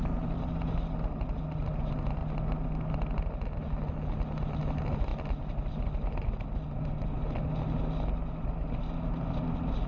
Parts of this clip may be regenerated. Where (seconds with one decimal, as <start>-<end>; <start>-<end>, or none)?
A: none